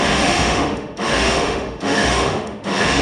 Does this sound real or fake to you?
fake